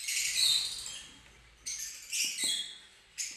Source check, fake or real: real